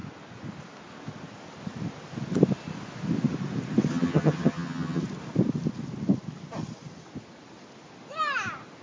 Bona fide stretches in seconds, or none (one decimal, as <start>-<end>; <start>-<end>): 0.0-3.9; 5.0-8.8